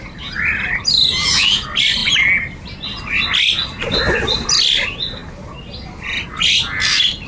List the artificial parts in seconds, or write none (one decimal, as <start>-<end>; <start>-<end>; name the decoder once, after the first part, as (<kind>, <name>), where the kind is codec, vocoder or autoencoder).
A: none